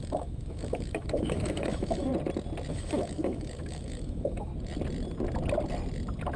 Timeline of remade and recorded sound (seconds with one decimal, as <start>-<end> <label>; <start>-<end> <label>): 0.0-2.1 remade; 2.1-2.7 recorded; 2.7-4.5 remade; 4.5-6.4 recorded